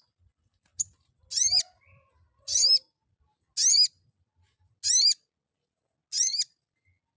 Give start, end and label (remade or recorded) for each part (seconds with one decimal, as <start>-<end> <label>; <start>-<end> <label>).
0.0-7.2 recorded